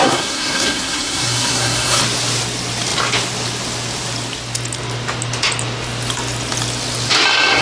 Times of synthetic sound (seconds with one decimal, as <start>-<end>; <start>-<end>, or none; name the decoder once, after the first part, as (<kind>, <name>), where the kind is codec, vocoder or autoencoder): 0.0-2.0 (codec, SNAC)